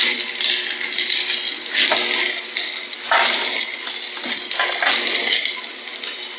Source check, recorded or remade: recorded